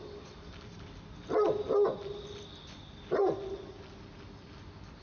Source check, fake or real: real